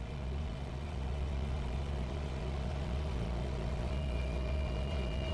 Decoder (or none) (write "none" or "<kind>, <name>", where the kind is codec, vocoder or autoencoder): vocoder, Vocos